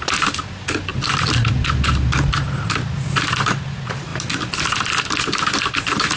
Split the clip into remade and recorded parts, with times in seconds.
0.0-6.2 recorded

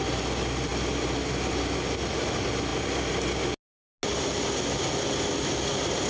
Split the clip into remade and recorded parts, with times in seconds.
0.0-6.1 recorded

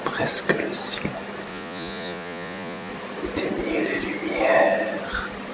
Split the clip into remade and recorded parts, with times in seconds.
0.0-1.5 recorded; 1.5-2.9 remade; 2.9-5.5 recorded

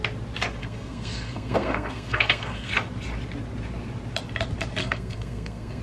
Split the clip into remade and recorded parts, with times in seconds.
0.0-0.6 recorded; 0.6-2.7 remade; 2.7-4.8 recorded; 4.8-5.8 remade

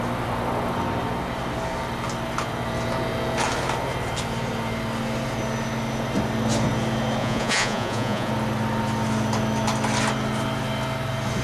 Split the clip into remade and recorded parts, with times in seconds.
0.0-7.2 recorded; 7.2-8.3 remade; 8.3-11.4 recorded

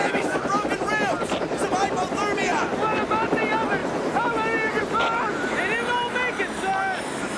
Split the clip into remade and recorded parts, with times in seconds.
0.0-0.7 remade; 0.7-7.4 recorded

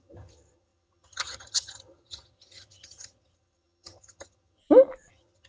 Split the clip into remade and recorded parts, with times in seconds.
0.0-4.6 remade; 4.6-5.1 recorded; 5.1-5.5 remade